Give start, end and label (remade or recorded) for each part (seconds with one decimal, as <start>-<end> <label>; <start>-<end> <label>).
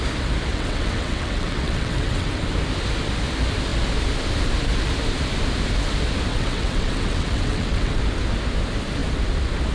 0.0-0.5 recorded; 0.5-2.4 remade; 2.4-6.3 recorded; 6.3-8.0 remade; 8.0-9.7 recorded